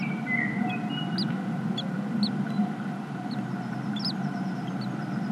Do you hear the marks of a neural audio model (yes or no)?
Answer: no